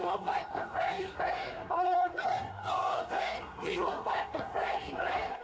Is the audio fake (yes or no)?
yes